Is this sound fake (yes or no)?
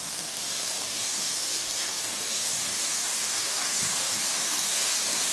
yes